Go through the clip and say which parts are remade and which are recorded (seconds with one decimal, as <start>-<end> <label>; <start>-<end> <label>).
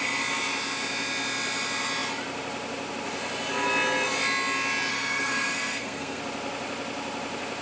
0.0-4.9 recorded; 4.9-6.2 remade; 6.2-7.6 recorded